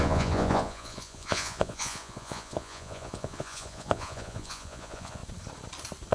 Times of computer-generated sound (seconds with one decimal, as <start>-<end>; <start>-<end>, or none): 0.0-5.2